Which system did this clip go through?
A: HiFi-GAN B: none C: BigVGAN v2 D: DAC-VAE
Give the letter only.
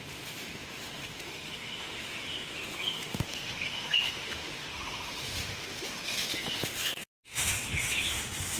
D